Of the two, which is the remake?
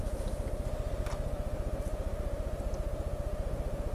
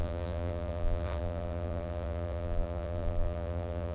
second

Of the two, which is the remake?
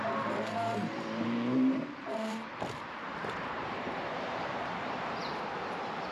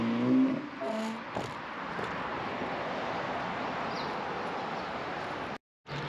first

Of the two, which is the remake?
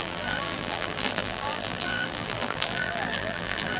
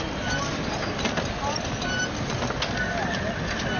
first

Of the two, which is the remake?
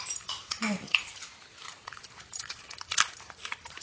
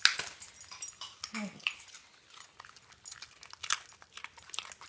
first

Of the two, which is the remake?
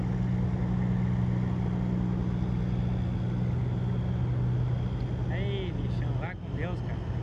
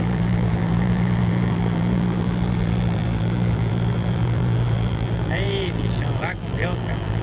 second